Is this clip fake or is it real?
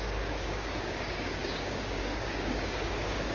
fake